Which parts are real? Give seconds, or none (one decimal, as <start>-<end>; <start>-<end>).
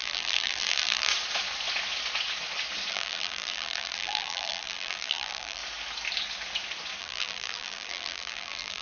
1.1-2.9; 5.6-7.0